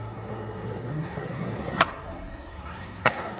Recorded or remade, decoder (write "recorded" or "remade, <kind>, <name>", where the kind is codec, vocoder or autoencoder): remade, codec, SNAC